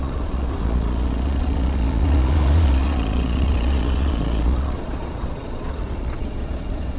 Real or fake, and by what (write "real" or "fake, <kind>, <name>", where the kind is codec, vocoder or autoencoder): fake, vocoder, Vocos